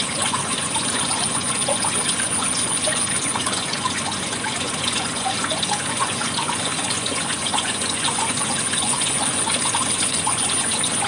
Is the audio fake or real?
fake